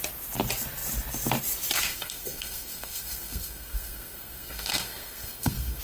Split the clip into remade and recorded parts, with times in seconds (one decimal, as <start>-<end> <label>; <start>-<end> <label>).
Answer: 0.0-1.9 recorded; 1.9-5.8 remade